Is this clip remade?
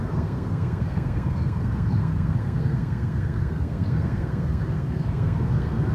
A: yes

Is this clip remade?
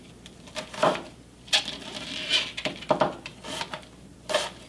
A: no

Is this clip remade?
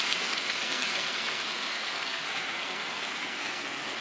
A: yes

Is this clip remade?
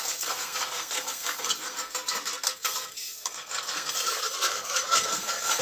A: yes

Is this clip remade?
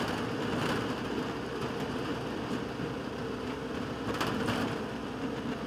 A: no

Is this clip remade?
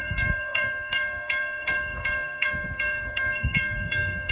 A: yes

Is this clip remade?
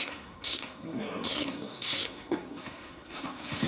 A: yes